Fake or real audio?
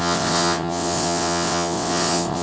fake